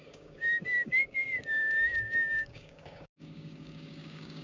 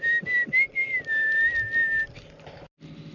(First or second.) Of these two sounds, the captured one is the second